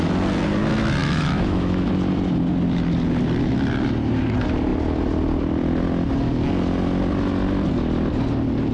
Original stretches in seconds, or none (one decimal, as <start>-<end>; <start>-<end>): 0.0-1.0; 1.9-8.7